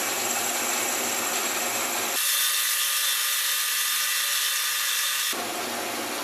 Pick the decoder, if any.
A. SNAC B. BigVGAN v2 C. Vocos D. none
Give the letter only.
D